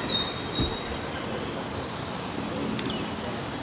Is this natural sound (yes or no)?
yes